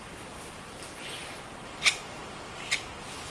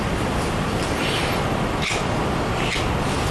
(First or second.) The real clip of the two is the second